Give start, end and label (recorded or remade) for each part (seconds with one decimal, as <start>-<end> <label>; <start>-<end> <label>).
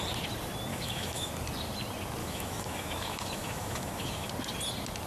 0.0-0.7 recorded; 0.7-1.3 remade; 1.3-2.2 recorded; 2.2-4.3 remade; 4.3-5.1 recorded